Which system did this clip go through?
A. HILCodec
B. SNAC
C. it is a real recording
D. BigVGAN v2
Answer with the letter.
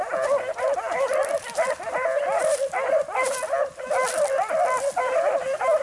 C